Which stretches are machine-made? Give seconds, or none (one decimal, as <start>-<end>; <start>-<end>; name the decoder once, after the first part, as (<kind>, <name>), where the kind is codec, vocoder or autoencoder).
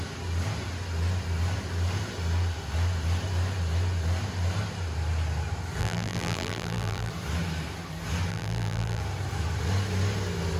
5.8-7.1 (vocoder, BigVGAN v2); 8.3-9.0